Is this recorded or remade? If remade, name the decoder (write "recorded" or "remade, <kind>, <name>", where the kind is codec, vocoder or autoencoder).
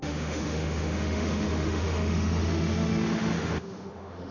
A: remade, autoencoder, DAC-VAE